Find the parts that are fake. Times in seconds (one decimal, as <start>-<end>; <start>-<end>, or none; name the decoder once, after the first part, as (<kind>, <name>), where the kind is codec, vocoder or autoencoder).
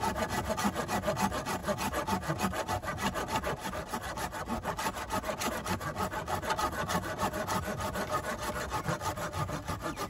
none